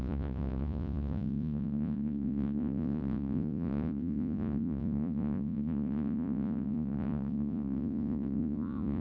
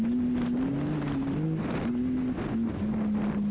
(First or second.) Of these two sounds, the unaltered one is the second